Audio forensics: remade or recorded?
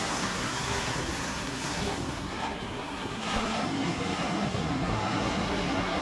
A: remade